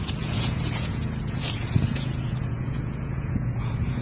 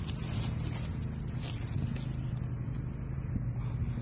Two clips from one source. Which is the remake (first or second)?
first